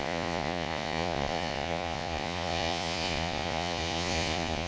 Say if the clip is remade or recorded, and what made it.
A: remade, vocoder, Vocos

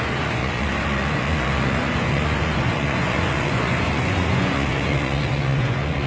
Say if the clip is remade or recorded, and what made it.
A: remade, vocoder, Vocos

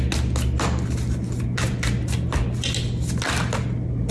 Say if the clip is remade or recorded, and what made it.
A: recorded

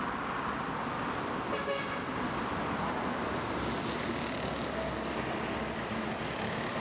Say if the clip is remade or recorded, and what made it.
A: recorded